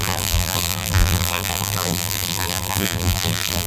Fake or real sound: fake